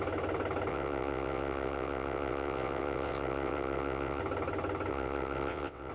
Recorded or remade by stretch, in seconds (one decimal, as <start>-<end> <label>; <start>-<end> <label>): 0.0-0.7 recorded; 0.7-4.2 remade; 4.2-4.9 recorded; 4.9-5.9 remade